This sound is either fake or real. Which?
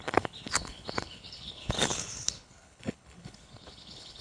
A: fake